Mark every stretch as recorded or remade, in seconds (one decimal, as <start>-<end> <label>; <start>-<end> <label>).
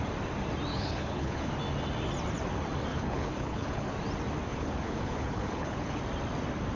0.0-0.7 recorded; 0.7-1.5 remade; 1.5-2.9 recorded; 2.9-3.9 remade; 3.9-4.5 recorded; 4.5-6.0 remade; 6.0-6.8 recorded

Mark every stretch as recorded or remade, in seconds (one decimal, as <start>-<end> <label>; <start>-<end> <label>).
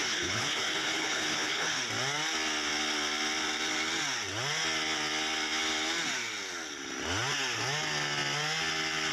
0.0-1.8 remade; 1.8-9.1 recorded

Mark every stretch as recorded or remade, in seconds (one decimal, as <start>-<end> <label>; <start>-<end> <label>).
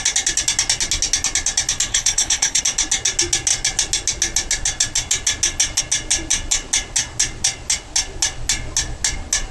0.0-1.9 recorded; 1.9-2.6 remade; 2.6-9.5 recorded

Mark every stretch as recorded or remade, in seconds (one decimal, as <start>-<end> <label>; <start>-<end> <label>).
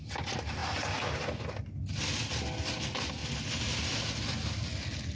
0.0-5.2 recorded